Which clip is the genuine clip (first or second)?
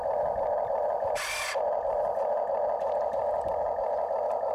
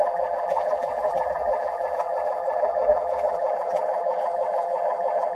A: first